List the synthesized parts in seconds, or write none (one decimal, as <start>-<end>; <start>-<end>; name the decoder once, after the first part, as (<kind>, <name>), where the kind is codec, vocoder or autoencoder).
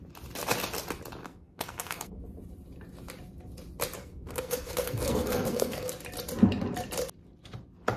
1.2-2.2 (codec, SNAC); 4.0-5.9